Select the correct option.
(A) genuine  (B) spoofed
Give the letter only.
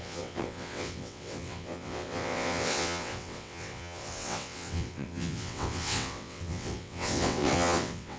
B